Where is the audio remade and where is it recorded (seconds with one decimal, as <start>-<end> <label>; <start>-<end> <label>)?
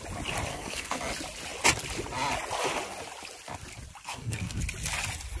0.0-0.5 recorded; 0.5-1.0 remade; 1.0-4.1 recorded; 4.1-4.6 remade; 4.6-5.4 recorded